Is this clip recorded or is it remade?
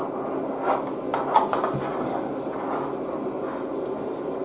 recorded